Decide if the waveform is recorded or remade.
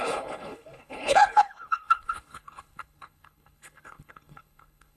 remade